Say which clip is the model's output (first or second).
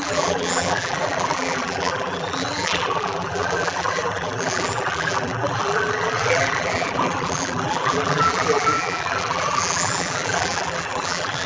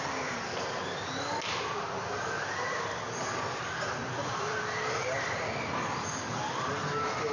first